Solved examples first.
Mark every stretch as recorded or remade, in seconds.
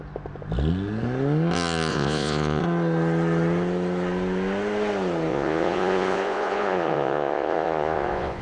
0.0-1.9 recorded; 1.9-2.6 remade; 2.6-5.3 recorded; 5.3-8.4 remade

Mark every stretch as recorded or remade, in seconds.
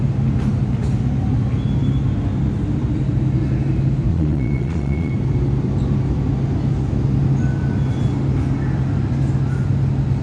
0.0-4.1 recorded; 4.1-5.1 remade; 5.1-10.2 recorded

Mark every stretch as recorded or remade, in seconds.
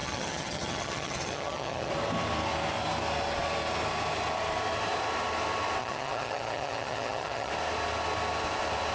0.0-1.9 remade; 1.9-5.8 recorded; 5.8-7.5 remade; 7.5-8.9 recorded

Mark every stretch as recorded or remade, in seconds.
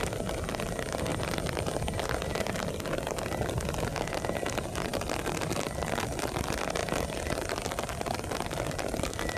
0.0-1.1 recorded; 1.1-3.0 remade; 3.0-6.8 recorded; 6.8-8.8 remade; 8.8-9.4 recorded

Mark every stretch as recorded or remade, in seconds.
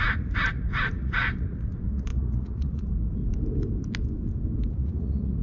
0.0-3.2 remade; 3.2-4.7 recorded; 4.7-5.4 remade